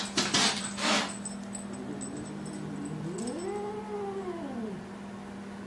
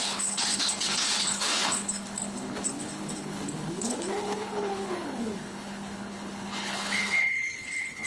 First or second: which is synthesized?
second